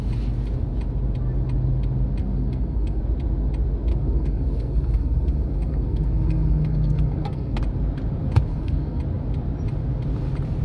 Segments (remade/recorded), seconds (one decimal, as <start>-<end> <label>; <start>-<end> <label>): 0.0-2.2 recorded; 2.2-3.0 remade; 3.0-3.9 recorded; 3.9-7.6 remade; 7.6-8.5 recorded; 8.5-9.0 remade; 9.0-10.6 recorded